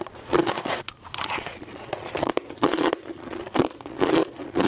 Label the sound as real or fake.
fake